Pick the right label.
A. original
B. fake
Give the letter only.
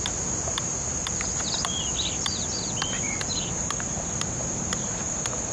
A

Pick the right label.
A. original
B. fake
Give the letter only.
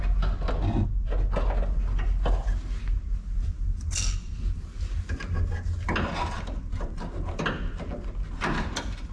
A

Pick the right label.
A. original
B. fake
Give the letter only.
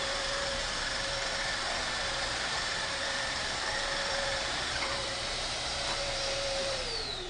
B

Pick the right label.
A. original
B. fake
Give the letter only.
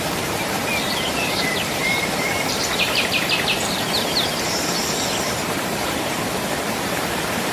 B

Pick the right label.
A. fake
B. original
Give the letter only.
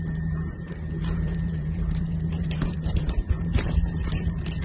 A